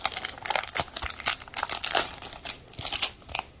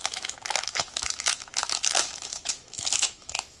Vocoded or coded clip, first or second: second